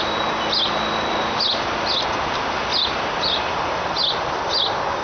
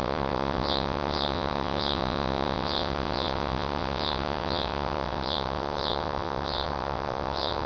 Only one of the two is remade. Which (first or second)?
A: second